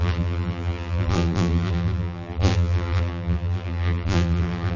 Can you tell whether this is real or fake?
fake